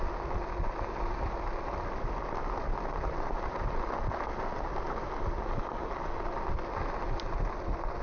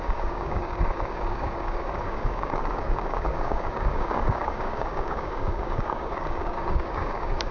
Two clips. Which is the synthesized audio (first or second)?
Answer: second